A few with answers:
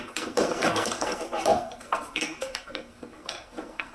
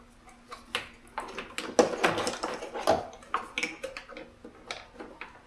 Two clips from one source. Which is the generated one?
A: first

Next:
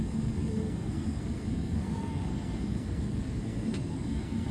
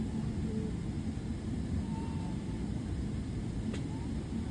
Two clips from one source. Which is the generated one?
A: first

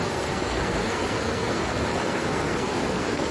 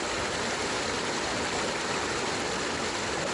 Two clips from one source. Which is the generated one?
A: first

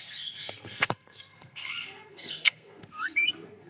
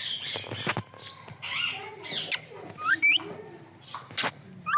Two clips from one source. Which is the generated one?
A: first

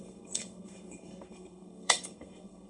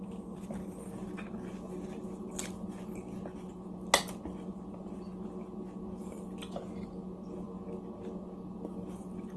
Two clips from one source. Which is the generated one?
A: first